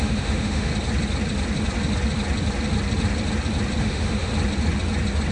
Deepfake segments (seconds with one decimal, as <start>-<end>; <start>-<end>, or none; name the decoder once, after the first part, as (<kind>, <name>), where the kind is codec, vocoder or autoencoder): 0.0-0.7 (autoencoder, DAC-VAE); 3.8-4.3